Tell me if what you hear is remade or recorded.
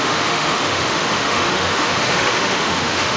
remade